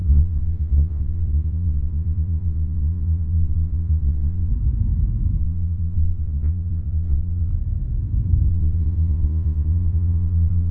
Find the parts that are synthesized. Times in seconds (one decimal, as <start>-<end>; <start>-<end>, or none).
0.0-4.5; 5.4-7.5; 8.5-10.7